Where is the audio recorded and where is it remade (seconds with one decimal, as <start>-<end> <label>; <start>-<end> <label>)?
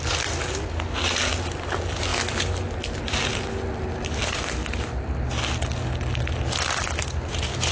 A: 0.0-7.7 recorded